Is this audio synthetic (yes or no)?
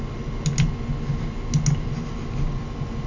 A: no